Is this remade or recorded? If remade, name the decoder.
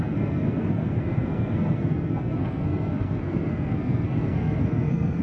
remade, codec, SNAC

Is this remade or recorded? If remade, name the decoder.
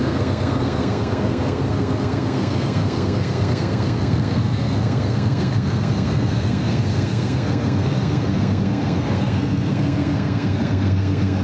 remade, codec, SNAC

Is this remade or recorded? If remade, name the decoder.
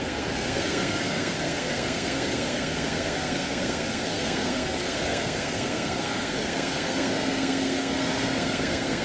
remade, codec, SNAC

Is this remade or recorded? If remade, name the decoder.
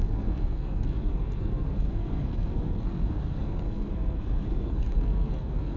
remade, codec, SNAC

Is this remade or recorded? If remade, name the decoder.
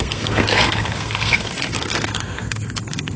remade, codec, SNAC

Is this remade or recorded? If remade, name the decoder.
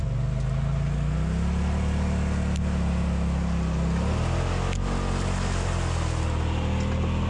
recorded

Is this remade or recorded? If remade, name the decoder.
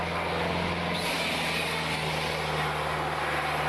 recorded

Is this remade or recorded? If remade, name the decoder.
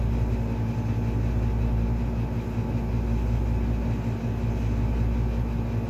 recorded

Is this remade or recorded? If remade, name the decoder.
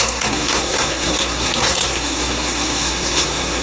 remade, codec, SNAC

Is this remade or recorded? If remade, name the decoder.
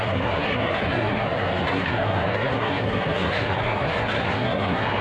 remade, codec, SNAC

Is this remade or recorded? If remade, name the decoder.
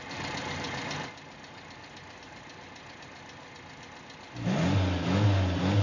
recorded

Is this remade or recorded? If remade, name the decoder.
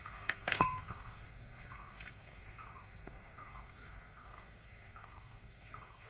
remade, codec, SNAC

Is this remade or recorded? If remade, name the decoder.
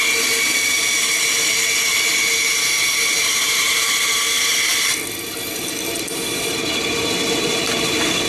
recorded